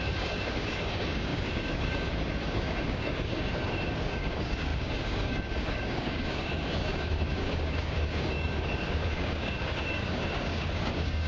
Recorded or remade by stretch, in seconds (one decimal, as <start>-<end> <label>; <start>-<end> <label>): 0.0-11.3 remade